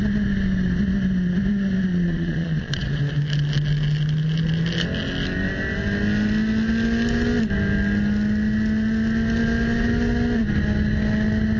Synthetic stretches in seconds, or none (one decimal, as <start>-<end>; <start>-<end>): 1.9-3.0